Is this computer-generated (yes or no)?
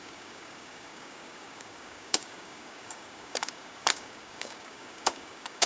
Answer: yes